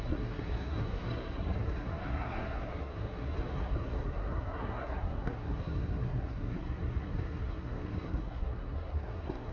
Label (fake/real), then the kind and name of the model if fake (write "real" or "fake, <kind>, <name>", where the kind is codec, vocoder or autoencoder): fake, codec, SNAC